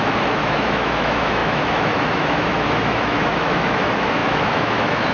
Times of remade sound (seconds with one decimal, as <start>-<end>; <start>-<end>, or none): 0.0-5.1